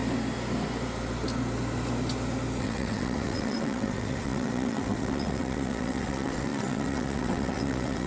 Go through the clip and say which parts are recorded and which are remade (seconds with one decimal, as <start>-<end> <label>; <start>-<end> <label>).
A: 0.0-2.6 recorded; 2.6-8.1 remade